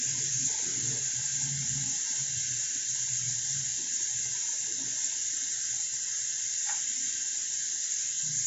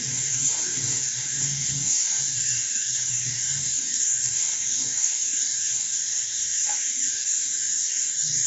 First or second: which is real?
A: first